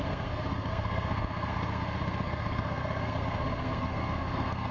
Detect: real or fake fake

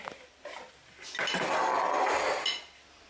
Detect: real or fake real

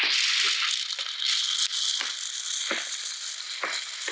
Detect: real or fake real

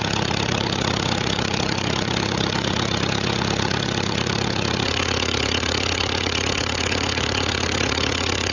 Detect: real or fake fake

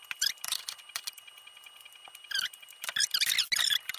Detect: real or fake real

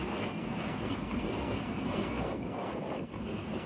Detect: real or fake fake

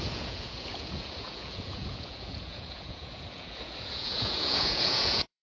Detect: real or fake fake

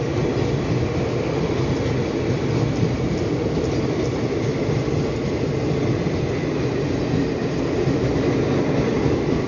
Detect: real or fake real